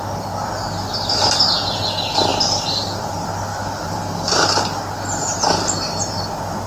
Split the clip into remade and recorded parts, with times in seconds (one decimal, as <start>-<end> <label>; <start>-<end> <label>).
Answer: 0.0-3.5 recorded; 3.5-4.8 remade; 4.8-6.7 recorded